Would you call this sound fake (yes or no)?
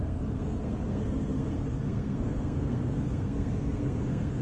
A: yes